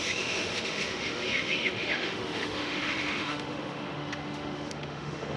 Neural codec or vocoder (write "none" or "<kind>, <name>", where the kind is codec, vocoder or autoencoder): autoencoder, DAC-VAE